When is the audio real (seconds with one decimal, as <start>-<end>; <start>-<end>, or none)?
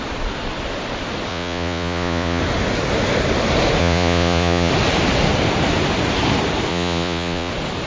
0.0-1.3; 2.4-3.8; 4.7-6.7; 7.5-7.9